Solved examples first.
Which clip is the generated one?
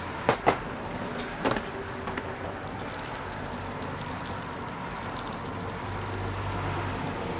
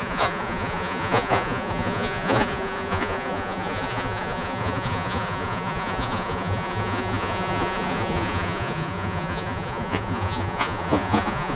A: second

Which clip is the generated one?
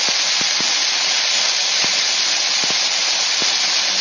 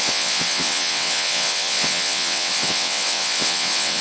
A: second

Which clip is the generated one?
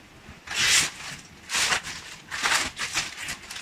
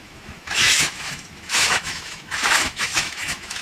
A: second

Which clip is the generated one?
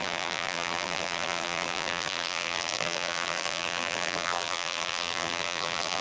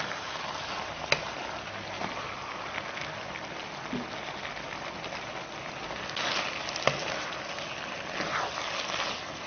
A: first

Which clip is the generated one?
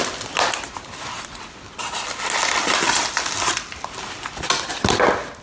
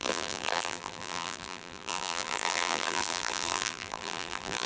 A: second